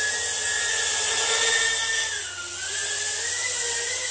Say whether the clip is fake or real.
real